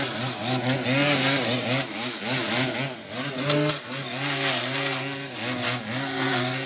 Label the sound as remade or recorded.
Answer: recorded